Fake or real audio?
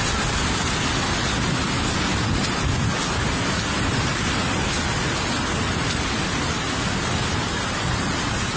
real